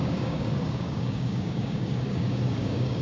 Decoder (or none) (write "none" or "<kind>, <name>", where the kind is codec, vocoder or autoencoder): codec, DAC